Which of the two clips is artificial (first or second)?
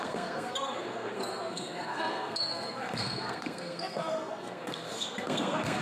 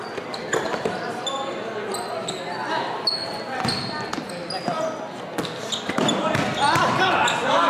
first